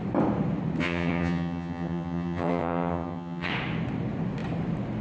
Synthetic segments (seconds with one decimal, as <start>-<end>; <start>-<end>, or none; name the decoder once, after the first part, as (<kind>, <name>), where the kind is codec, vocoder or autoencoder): 0.8-3.5 (vocoder, HiFi-GAN)